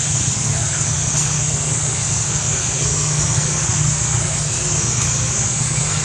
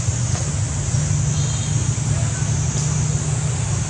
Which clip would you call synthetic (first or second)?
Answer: first